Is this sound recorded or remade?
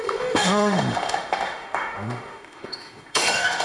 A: remade